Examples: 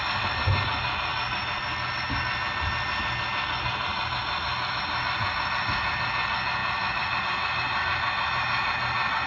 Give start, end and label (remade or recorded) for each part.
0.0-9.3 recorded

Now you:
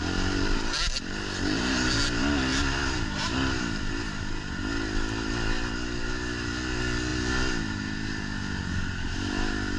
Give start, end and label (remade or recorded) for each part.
0.0-9.8 recorded